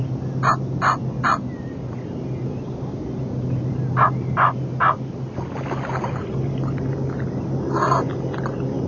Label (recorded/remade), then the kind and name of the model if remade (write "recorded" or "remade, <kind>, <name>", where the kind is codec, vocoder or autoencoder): recorded